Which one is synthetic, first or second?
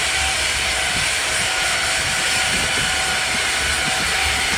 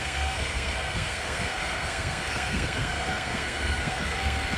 second